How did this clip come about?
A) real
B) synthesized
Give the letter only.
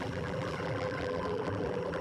B